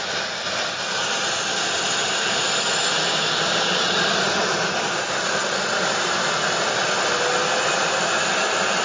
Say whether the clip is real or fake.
real